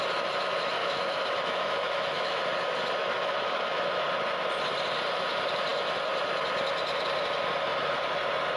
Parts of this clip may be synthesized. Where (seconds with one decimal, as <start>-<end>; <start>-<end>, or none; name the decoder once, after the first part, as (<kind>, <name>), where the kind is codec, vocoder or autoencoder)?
0.8-2.4 (autoencoder, DAC-VAE); 3.0-4.0